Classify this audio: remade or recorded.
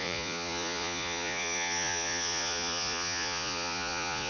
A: remade